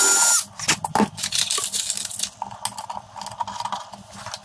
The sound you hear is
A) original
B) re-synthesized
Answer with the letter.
A